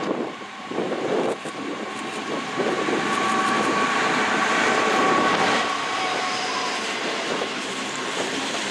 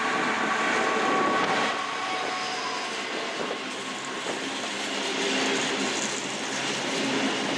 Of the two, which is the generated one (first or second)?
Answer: first